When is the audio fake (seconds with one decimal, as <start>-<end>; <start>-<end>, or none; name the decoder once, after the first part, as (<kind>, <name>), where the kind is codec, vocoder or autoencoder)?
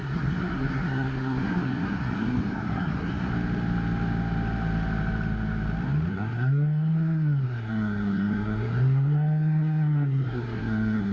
0.0-3.3 (codec, SNAC); 6.1-11.1